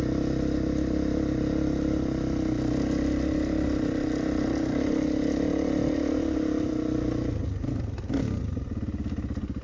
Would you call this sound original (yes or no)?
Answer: yes